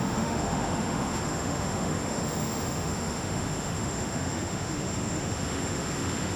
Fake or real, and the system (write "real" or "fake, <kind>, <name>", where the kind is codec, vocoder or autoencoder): fake, autoencoder, DAC-VAE